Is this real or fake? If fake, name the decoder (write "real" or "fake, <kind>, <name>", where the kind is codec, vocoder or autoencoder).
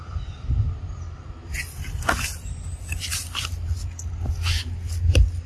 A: real